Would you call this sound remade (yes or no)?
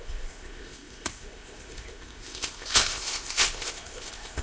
yes